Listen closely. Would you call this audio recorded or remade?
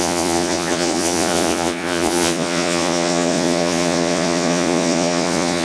remade